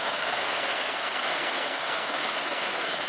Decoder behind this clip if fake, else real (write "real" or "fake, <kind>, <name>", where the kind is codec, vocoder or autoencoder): fake, codec, SNAC